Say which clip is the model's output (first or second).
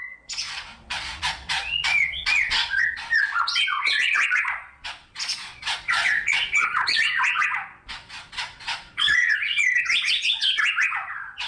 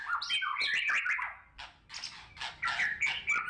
first